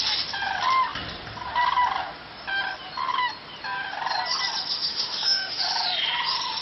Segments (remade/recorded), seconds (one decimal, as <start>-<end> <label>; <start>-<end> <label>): 0.0-4.9 recorded; 4.9-5.6 remade; 5.6-6.6 recorded

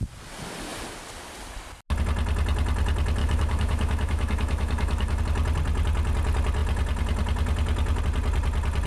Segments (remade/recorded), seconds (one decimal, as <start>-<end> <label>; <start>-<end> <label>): 0.0-3.2 recorded; 3.2-5.2 remade; 5.2-8.9 recorded

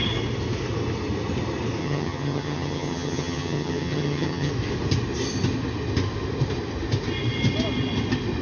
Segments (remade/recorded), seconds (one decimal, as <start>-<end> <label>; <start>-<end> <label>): 0.0-1.8 recorded; 1.8-4.5 remade; 4.5-8.4 recorded

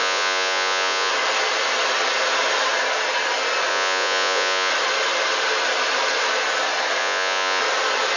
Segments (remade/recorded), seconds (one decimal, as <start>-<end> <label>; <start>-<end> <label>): 0.0-1.1 remade; 1.1-3.7 recorded; 3.7-4.7 remade; 4.7-7.0 recorded; 7.0-7.6 remade; 7.6-8.2 recorded

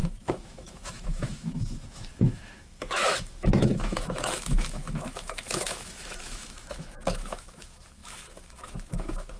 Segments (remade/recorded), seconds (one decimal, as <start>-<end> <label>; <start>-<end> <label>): 0.0-9.4 remade

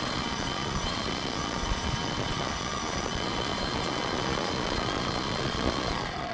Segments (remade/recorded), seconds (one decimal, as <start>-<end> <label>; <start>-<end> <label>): 0.0-6.3 remade

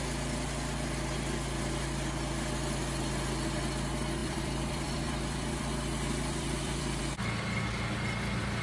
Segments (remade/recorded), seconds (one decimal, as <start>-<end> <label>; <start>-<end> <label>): 0.0-4.2 recorded; 4.2-7.0 remade; 7.0-8.6 recorded

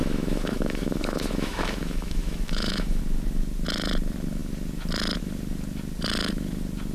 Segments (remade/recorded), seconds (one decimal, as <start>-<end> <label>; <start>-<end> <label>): 0.0-3.0 remade; 3.0-6.9 recorded